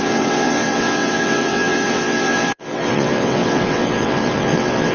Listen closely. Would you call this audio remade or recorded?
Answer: remade